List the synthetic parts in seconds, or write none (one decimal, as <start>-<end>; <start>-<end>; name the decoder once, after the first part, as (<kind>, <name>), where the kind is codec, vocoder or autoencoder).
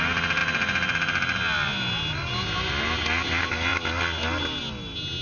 none